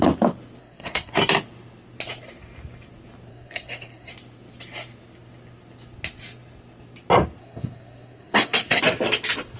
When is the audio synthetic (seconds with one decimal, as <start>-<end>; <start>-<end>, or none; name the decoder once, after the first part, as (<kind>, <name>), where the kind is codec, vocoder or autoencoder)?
0.6-1.1 (codec, SNAC); 3.3-4.1; 7.4-8.8